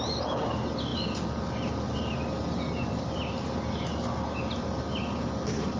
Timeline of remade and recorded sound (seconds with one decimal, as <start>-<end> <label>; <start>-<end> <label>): 0.0-5.8 recorded